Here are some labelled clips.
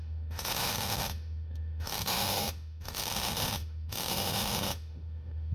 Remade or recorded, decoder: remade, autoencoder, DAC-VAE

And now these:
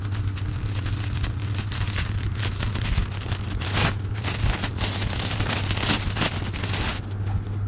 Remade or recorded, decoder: recorded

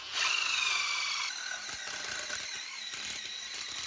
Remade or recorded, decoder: recorded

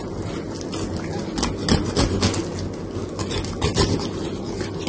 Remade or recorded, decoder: recorded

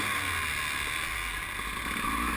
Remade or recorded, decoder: recorded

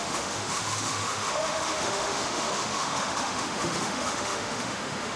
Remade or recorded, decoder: remade, autoencoder, DAC-VAE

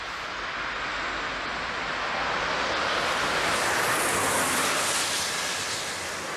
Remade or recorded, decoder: recorded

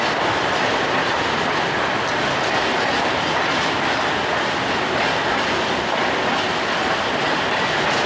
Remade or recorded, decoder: recorded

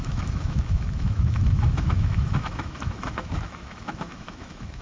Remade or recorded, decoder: remade, autoencoder, DAC-VAE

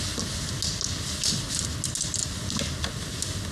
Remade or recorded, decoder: recorded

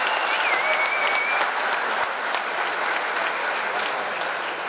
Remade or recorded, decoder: recorded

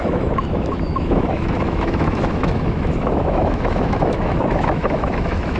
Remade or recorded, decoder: remade, autoencoder, DAC-VAE